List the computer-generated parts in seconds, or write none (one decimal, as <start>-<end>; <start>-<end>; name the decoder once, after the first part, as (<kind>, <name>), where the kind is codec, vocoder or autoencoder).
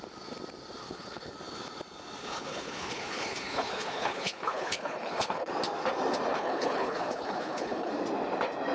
0.8-1.3 (codec, HILCodec); 2.2-5.5; 6.3-7.9